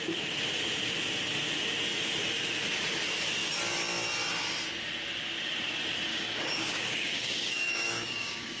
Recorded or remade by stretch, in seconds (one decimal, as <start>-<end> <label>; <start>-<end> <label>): 0.0-6.1 recorded; 6.1-8.6 remade